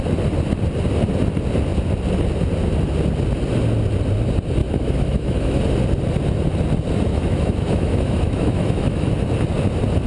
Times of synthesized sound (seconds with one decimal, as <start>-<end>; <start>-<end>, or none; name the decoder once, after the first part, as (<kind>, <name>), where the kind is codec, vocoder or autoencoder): 4.6-5.6 (autoencoder, DAC-VAE); 7.1-9.1